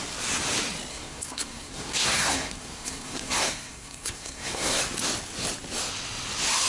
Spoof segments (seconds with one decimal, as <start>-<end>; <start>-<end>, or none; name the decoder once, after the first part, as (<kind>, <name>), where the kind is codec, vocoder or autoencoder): 0.9-4.8 (codec, SNAC)